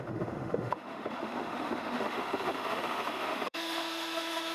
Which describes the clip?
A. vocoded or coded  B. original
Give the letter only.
A